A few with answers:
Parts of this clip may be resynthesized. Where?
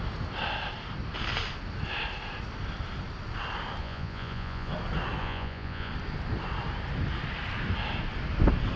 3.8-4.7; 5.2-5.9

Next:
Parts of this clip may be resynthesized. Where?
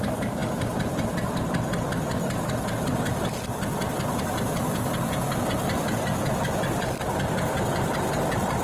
0.4-1.4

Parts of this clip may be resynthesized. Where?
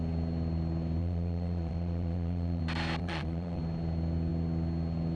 1.0-2.6; 3.0-3.6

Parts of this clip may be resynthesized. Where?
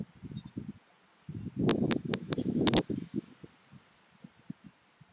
1.7-3.3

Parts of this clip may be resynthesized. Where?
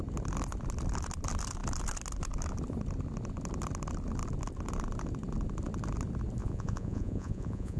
6.4-7.8